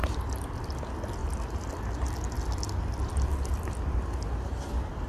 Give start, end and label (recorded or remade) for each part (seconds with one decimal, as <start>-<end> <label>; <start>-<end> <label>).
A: 0.0-0.6 remade; 0.6-1.2 recorded; 1.2-1.7 remade; 1.7-3.3 recorded; 3.3-4.0 remade; 4.0-5.1 recorded